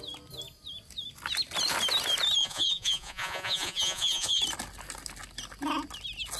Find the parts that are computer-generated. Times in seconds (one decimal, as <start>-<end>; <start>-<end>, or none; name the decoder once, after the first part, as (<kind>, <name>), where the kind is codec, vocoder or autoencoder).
2.4-4.4 (vocoder, Vocos)